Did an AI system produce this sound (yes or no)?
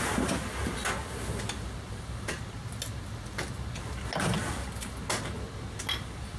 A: no